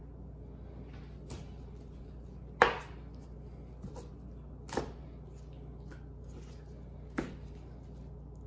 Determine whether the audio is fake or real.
real